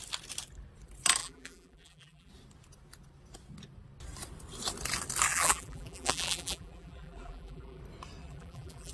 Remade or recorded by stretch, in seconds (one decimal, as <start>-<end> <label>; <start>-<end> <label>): 0.0-1.2 recorded; 1.2-2.3 remade; 2.3-5.3 recorded; 5.3-7.8 remade; 7.8-8.2 recorded; 8.2-8.9 remade

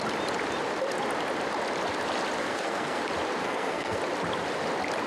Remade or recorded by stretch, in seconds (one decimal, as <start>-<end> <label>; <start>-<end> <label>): 0.0-2.4 recorded; 2.4-3.0 remade; 3.0-3.4 recorded; 3.4-4.0 remade; 4.0-5.1 recorded

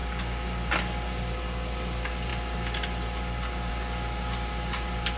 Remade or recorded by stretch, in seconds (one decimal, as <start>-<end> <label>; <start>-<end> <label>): 0.0-5.2 recorded

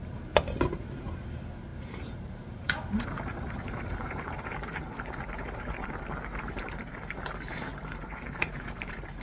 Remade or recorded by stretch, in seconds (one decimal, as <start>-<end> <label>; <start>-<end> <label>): 0.0-9.2 remade

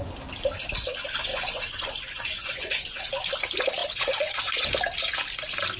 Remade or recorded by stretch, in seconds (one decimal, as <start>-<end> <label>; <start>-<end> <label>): 0.0-1.3 recorded; 1.3-3.1 remade; 3.1-3.8 recorded; 3.8-4.7 remade; 4.7-5.8 recorded

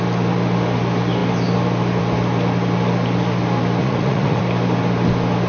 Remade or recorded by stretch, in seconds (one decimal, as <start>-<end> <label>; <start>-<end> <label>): 0.0-3.8 recorded; 3.8-4.4 remade; 4.4-5.5 recorded

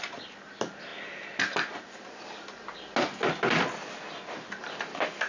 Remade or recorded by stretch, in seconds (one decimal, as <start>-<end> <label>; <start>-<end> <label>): 0.0-5.3 recorded